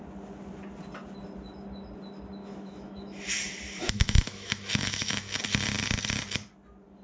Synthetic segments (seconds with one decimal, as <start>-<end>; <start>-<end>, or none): 2.4-3.2; 3.8-5.4